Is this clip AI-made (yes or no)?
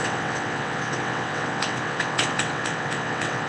yes